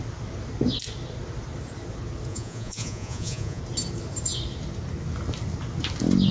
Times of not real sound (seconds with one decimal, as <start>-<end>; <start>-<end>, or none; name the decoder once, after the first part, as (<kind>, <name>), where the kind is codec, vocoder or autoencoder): 2.3-3.6 (vocoder, Vocos)